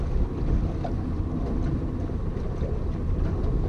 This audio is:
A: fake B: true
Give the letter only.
B